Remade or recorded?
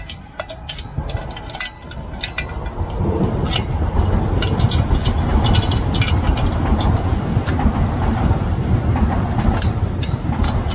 recorded